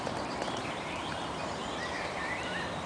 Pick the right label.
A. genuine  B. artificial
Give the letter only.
B